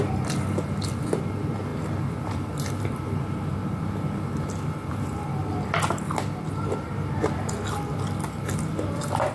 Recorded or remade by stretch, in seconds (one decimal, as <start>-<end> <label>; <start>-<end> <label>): 0.0-5.3 remade; 5.3-8.9 recorded; 8.9-9.3 remade